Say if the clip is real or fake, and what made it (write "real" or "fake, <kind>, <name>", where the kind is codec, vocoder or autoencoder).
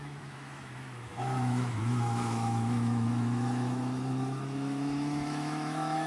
fake, autoencoder, DAC-VAE